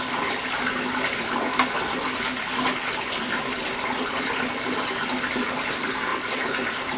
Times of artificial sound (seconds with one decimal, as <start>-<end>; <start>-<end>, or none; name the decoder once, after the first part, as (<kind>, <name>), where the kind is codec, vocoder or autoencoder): 6.1-7.0 (vocoder, BigVGAN v2)

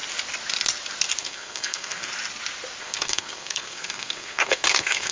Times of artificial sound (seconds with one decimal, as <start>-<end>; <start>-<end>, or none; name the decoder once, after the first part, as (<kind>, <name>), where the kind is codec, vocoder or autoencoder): 1.2-2.1 (codec, SNAC); 2.8-5.1

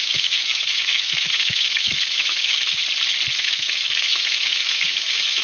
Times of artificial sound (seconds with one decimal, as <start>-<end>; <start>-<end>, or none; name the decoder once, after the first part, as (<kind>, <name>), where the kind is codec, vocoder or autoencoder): 0.0-2.8 (autoencoder, DAC-VAE); 3.4-5.4